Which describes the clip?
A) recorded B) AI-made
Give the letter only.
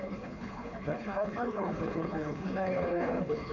B